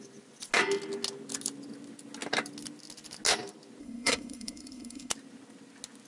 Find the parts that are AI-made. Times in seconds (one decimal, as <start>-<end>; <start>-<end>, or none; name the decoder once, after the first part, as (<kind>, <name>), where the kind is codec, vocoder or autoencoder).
3.8-5.1 (codec, SNAC)